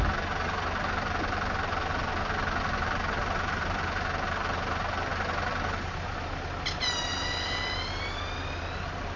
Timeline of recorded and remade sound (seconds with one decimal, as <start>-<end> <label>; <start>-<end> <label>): 0.0-9.2 recorded